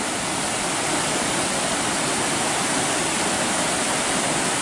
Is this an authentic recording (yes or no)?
no